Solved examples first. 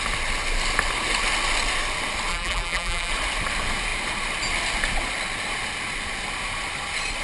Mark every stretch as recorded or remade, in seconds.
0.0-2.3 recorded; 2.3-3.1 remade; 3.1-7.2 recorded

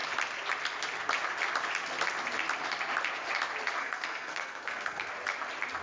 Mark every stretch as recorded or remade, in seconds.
0.0-3.8 recorded; 3.8-5.1 remade; 5.1-5.8 recorded